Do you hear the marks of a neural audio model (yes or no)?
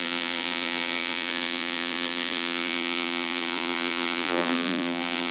yes